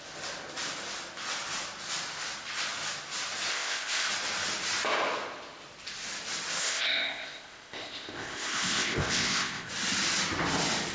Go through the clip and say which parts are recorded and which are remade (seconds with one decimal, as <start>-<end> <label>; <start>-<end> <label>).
0.0-3.5 recorded; 3.5-4.1 remade; 4.1-6.6 recorded; 6.6-9.7 remade; 9.7-10.9 recorded